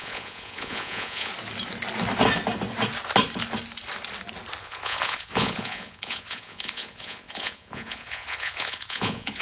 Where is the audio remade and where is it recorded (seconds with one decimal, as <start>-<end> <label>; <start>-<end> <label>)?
0.0-1.3 remade; 1.3-4.6 recorded; 4.6-9.4 remade